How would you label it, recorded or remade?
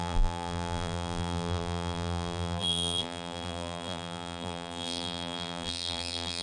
remade